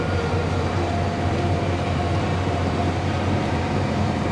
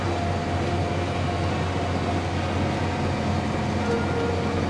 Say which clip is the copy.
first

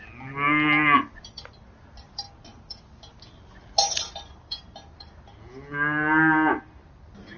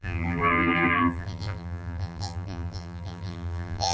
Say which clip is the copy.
second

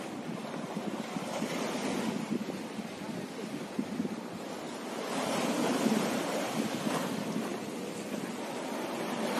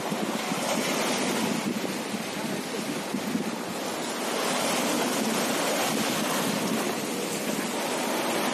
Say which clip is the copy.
first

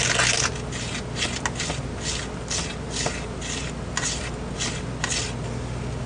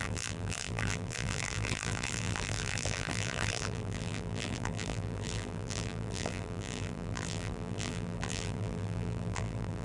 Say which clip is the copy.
second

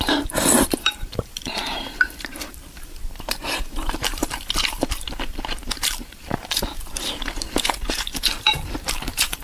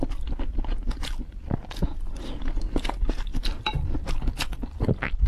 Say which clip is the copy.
first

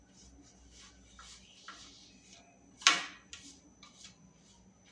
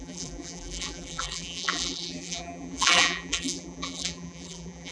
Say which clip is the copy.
second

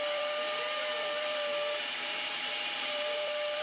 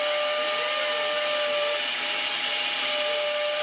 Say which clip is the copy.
first